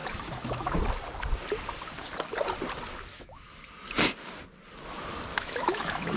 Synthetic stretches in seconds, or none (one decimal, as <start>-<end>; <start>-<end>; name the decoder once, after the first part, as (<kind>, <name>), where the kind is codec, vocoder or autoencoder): 0.0-0.8 (autoencoder, DAC-VAE); 3.1-3.7; 5.3-6.2